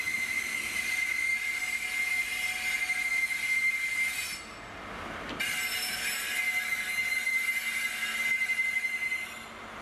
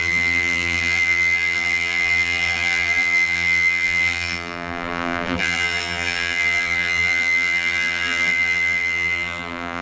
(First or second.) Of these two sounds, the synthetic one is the second